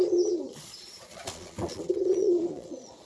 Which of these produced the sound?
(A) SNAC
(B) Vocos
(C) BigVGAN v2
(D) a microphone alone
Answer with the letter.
B